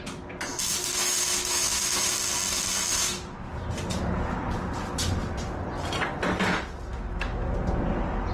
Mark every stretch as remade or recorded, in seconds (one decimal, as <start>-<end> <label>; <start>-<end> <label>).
0.0-0.9 recorded; 0.9-2.1 remade; 2.1-2.9 recorded; 2.9-3.5 remade; 3.5-6.9 recorded; 6.9-7.5 remade; 7.5-8.3 recorded